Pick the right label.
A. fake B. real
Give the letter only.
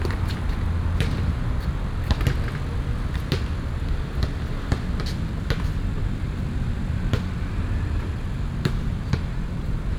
A